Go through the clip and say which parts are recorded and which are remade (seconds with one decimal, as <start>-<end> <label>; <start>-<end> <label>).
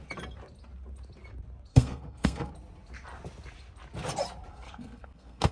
0.0-1.7 recorded; 1.7-2.5 remade; 2.5-4.5 recorded; 4.5-5.5 remade